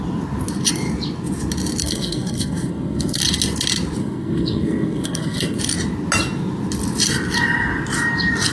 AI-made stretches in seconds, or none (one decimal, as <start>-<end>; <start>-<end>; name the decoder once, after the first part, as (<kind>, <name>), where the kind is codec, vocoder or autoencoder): 1.8-3.2 (codec, SNAC); 4.0-5.6